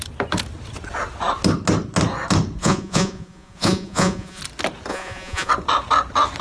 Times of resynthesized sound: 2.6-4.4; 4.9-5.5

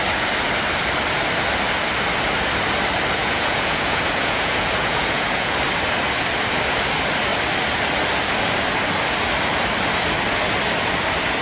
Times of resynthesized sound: 3.2-5.6

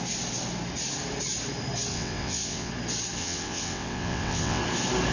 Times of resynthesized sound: 1.9-2.7; 3.2-4.6

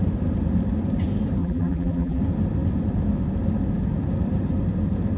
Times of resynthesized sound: 1.4-2.2

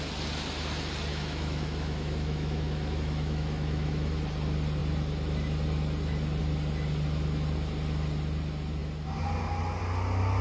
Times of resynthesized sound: 1.1-4.2

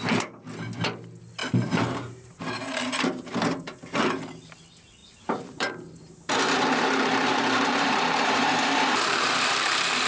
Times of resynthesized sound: 1.4-2.4; 5.0-10.1

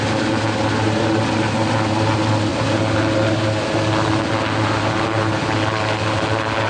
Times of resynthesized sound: none